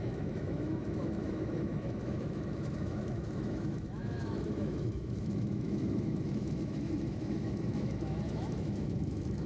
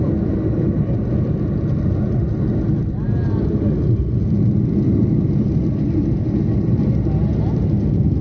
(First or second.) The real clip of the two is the second